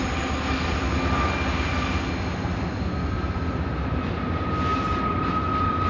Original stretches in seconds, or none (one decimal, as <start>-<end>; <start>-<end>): 0.0-5.9